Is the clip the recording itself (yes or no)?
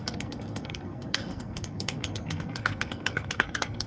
no